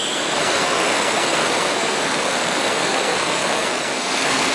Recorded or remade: remade